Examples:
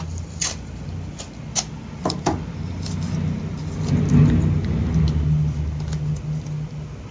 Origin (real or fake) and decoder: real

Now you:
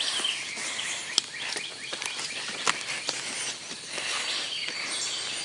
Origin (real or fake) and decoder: real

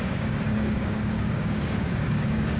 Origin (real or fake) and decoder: fake, codec, DAC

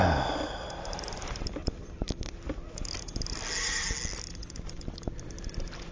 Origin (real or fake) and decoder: real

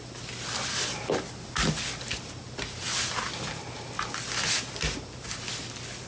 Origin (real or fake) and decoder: real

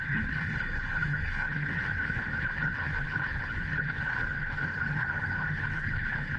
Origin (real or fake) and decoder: fake, codec, HILCodec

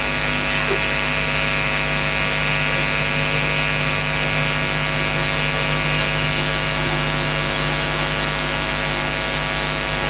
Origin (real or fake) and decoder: real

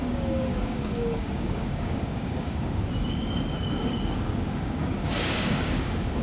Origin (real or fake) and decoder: fake, codec, DAC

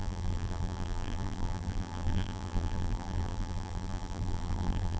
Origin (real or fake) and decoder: fake, vocoder, BigVGAN v2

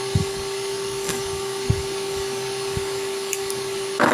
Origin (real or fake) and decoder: fake, codec, DAC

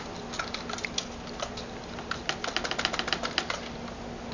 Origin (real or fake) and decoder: real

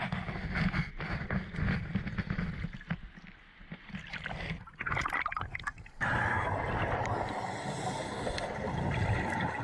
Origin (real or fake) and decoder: real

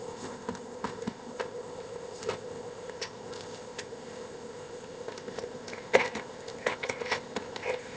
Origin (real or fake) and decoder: fake, codec, ZipCodec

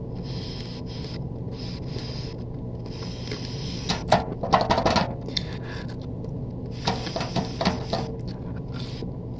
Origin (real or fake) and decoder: real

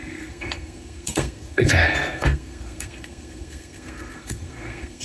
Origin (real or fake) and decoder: fake, codec, SNAC